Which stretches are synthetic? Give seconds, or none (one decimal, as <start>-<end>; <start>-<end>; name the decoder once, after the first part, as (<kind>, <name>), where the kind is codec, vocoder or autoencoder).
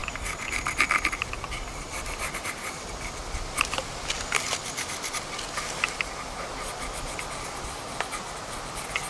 none